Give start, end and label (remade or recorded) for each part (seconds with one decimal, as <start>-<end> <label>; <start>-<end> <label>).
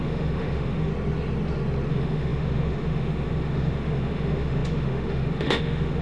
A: 0.0-0.9 remade; 0.9-1.9 recorded; 1.9-6.0 remade